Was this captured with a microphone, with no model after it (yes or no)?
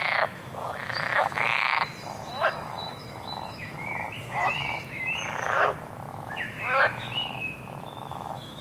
no